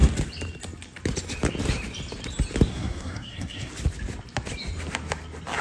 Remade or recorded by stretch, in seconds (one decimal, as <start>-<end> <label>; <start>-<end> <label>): 0.0-2.7 recorded; 2.7-3.7 remade; 3.7-5.6 recorded